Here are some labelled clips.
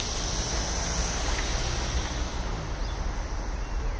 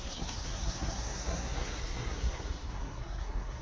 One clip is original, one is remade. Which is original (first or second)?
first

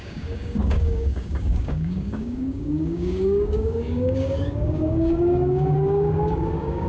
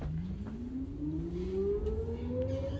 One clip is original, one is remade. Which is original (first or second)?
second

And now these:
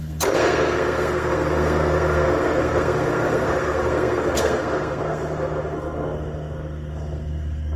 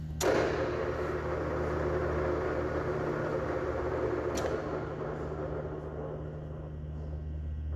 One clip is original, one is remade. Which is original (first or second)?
second